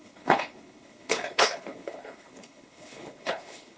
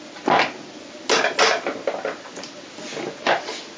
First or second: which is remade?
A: first